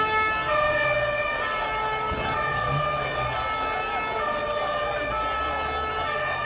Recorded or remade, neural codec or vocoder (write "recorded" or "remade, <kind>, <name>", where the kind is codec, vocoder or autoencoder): recorded